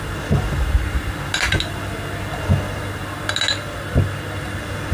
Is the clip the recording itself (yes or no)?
yes